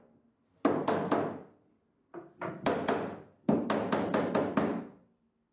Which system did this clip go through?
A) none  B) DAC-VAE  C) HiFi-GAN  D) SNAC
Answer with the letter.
A